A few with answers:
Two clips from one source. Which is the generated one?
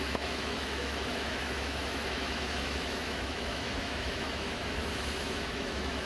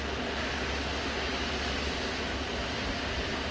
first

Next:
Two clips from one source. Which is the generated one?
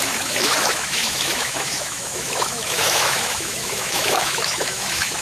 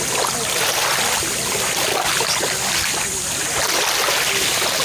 first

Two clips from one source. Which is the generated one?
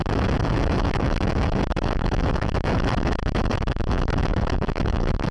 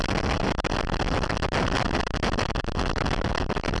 first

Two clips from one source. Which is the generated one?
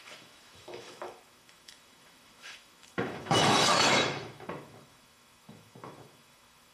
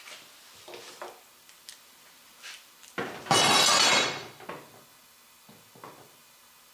first